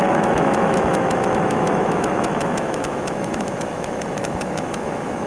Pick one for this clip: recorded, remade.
remade